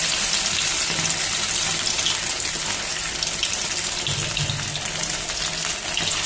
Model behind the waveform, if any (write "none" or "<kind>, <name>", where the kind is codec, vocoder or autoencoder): none